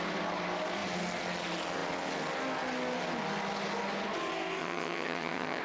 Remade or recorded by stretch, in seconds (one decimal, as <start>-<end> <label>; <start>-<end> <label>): 0.0-4.6 recorded; 4.6-5.6 remade